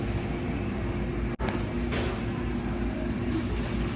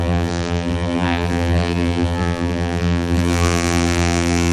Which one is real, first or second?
first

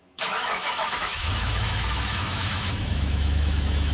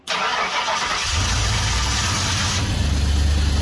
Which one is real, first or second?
second